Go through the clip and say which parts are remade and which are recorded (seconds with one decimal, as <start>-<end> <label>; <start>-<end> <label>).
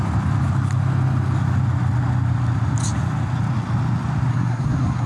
0.0-4.3 recorded; 4.3-5.1 remade